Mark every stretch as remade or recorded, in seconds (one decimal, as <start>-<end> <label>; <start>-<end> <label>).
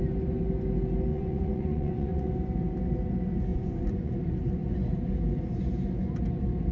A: 0.0-1.1 recorded; 1.1-2.3 remade; 2.3-3.5 recorded; 3.5-4.1 remade; 4.1-6.7 recorded